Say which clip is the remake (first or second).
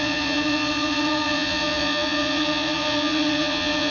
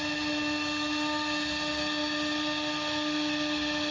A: first